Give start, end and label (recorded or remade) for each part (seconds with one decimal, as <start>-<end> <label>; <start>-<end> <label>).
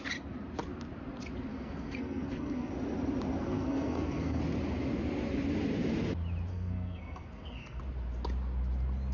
0.0-1.5 recorded; 1.5-2.7 remade; 2.7-3.4 recorded; 3.4-4.4 remade; 4.4-6.5 recorded; 6.5-7.8 remade; 7.8-9.1 recorded